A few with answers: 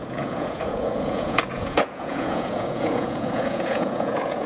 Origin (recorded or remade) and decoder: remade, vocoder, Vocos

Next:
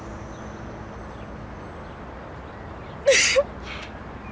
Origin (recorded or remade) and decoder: recorded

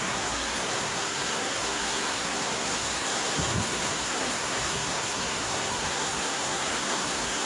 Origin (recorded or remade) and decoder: remade, codec, SNAC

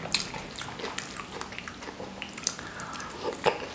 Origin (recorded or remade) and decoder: recorded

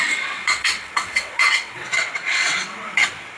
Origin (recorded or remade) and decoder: remade, vocoder, WaveNeXt